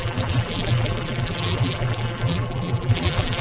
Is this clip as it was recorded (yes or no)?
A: no